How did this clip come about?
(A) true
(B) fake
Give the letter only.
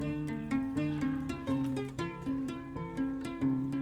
B